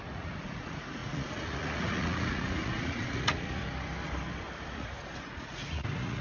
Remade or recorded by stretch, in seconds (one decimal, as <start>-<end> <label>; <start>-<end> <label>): 0.0-3.6 remade; 3.6-4.7 recorded; 4.7-6.2 remade